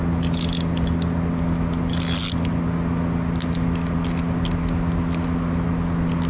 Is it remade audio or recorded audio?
recorded